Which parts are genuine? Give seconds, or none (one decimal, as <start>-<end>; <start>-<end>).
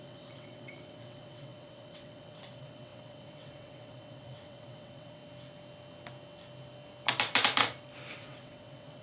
5.2-8.1